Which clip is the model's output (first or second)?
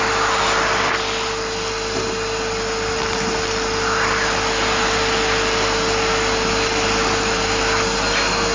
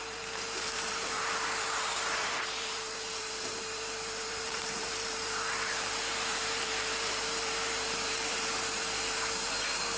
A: second